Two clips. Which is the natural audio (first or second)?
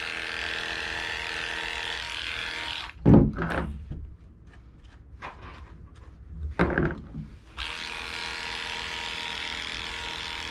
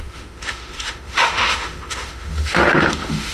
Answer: first